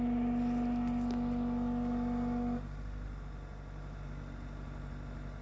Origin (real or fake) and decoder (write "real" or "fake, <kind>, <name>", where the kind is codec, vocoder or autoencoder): real